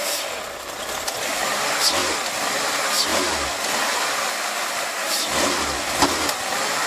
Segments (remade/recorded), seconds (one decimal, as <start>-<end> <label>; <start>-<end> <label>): 0.0-6.9 recorded